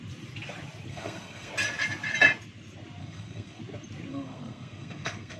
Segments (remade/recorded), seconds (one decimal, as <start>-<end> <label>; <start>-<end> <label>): 0.0-0.9 recorded; 0.9-1.5 remade; 1.5-3.0 recorded; 3.0-3.6 remade; 3.6-4.1 recorded; 4.1-5.4 remade